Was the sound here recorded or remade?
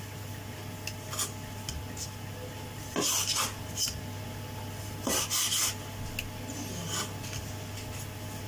recorded